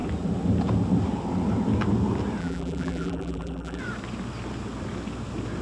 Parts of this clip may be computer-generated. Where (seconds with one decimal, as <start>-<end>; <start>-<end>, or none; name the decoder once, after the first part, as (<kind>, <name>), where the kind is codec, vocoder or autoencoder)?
2.4-3.8 (vocoder, BigVGAN v2)